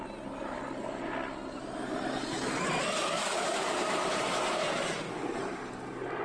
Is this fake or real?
real